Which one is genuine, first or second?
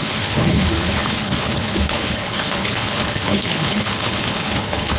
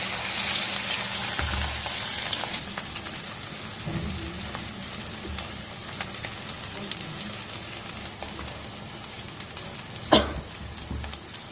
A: second